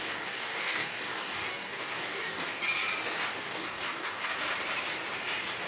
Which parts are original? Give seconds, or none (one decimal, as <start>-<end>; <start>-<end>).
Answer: 2.6-3.4; 4.3-5.7